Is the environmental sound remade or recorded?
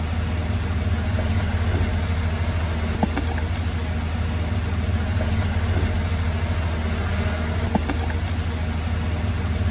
recorded